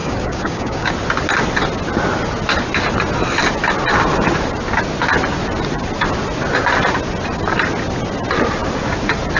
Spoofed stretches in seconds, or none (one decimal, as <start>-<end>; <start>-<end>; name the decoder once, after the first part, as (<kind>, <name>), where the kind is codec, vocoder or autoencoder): 0.0-0.9 (codec, DAC)